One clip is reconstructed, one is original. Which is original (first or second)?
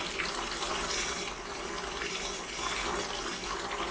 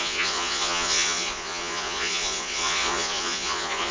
first